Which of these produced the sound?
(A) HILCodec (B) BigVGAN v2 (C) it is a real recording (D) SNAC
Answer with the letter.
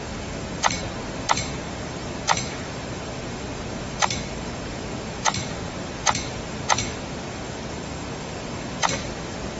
B